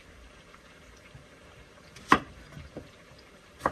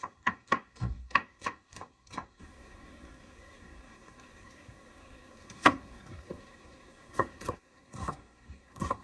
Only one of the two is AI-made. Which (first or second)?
second